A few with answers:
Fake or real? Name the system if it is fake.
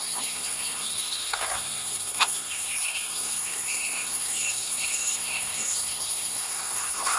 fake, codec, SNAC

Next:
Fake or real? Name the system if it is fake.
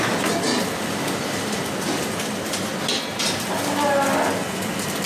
real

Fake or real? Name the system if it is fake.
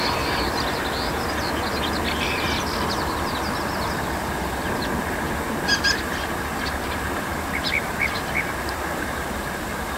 real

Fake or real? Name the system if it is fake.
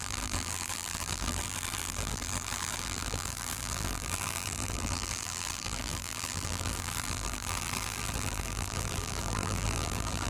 fake, vocoder, BigVGAN v2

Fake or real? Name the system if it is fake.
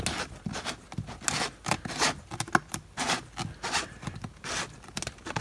real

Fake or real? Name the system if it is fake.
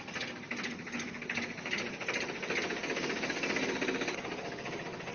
real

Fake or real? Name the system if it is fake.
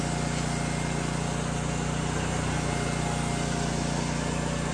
real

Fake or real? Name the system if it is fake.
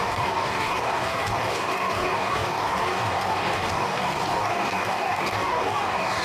fake, codec, DAC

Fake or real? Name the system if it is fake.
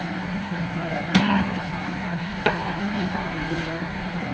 fake, codec, SNAC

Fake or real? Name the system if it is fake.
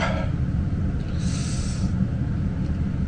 real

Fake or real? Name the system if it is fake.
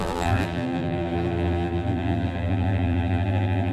fake, vocoder, BigVGAN v2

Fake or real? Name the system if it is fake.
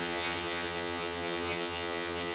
fake, vocoder, HiFi-GAN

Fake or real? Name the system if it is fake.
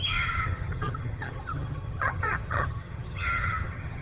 fake, vocoder, HiFi-GAN